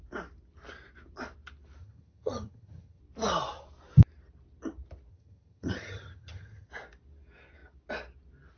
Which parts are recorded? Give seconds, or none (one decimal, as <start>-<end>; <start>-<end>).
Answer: 0.0-1.8; 3.0-5.1; 6.7-8.6